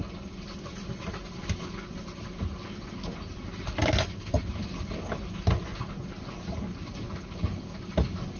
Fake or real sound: real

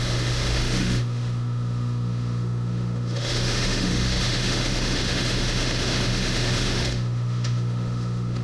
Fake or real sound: fake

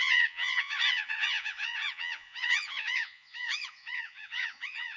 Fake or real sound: fake